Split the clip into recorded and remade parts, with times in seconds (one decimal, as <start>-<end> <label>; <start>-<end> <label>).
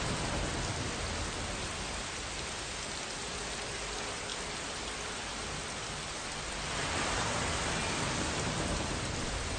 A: 0.0-9.6 recorded